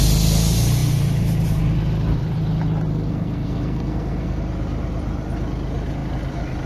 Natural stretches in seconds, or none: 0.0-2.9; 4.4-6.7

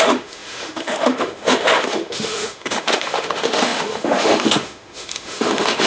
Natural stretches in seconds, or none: none